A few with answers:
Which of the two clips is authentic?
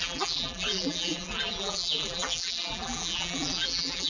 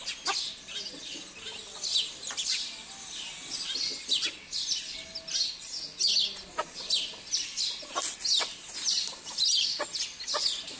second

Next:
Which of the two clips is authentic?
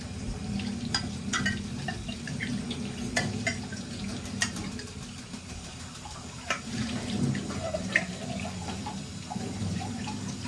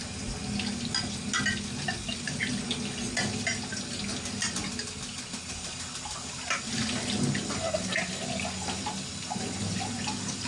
second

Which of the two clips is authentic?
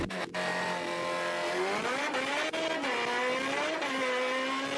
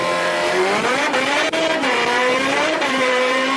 first